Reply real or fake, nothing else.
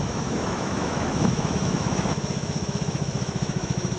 fake